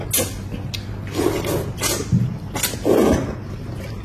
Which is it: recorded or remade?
recorded